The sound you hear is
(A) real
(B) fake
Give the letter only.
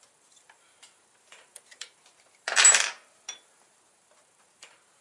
B